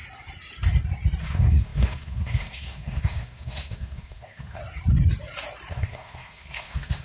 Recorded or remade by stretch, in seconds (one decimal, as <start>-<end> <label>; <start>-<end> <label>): 0.0-1.2 recorded; 1.2-4.6 remade; 4.6-5.7 recorded; 5.7-7.0 remade